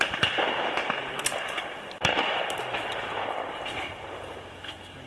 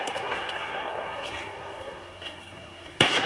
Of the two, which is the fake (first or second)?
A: second